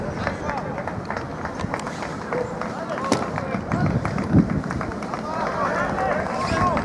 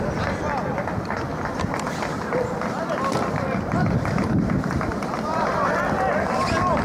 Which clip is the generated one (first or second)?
second